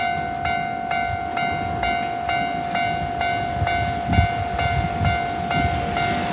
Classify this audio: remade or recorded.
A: recorded